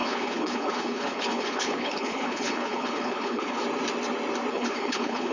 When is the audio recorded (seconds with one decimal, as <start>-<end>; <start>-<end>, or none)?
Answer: 3.6-4.5